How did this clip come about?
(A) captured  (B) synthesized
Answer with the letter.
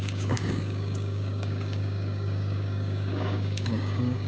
B